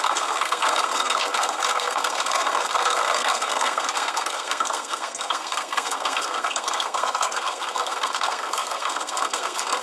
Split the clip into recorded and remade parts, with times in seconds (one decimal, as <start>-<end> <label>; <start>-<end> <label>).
0.0-9.8 remade